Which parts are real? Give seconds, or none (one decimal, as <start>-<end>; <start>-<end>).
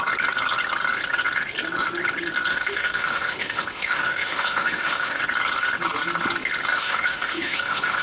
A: 0.0-2.5; 5.2-6.7